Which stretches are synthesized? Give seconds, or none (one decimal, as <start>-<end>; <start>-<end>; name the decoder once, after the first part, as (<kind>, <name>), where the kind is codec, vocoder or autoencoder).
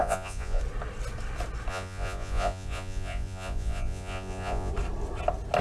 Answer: 0.0-0.6 (vocoder, Vocos); 1.7-4.7